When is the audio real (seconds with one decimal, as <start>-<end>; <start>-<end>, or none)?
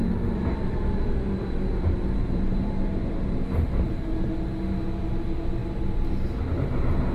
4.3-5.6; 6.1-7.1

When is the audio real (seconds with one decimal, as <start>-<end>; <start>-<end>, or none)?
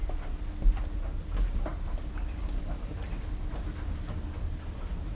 0.0-5.1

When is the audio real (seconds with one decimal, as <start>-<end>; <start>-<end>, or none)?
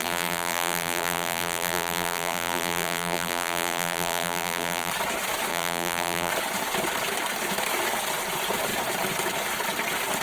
4.9-5.5; 6.3-10.2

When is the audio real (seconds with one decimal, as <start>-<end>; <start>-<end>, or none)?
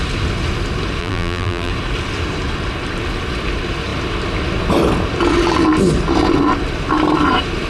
0.0-1.0; 1.7-7.7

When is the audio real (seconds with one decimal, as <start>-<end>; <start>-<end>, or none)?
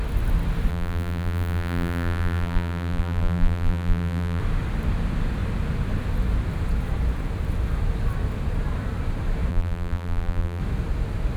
0.0-0.7; 4.4-9.5; 10.6-11.4